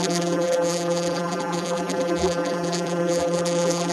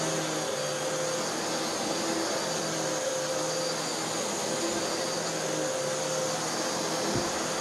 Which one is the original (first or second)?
second